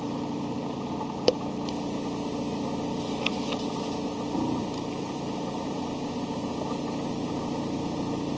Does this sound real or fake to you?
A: real